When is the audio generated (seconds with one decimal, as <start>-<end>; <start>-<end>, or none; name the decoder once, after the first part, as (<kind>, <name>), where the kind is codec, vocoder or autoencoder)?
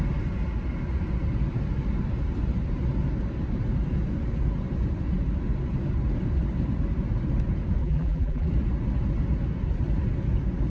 7.8-8.5 (vocoder, BigVGAN v2)